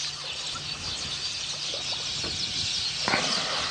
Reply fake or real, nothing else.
real